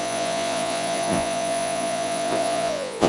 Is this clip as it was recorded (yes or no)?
no